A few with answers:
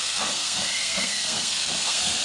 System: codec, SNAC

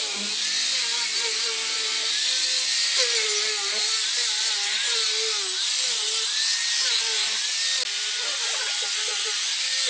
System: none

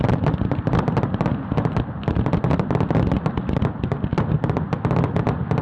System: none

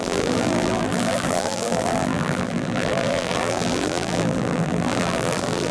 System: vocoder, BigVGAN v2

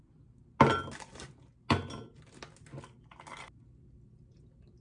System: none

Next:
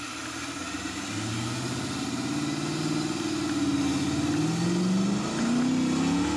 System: none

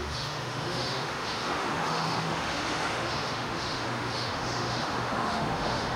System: autoencoder, DAC-VAE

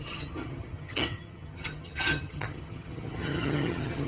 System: vocoder, HiFi-GAN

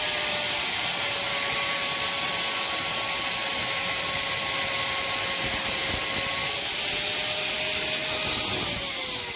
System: none